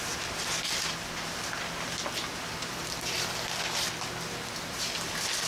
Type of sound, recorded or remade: recorded